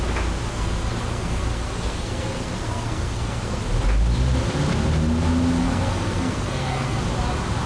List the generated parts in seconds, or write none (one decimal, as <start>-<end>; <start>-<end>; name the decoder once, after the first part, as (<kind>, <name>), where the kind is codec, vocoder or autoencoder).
0.5-3.6 (codec, SNAC); 5.6-7.0